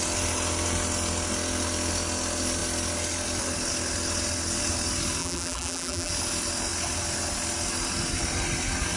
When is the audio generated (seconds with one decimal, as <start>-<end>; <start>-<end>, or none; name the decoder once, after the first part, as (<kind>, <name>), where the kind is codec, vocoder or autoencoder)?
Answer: 5.2-6.1 (vocoder, BigVGAN v2)